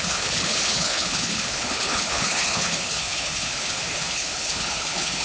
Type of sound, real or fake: fake